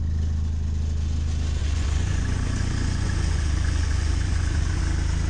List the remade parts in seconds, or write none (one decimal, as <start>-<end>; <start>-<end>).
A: 1.6-4.8